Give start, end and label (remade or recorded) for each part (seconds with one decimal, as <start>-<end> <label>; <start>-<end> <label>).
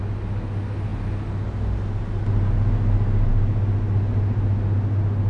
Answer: 0.0-5.3 recorded